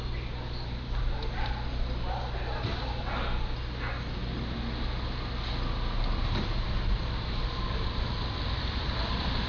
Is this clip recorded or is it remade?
recorded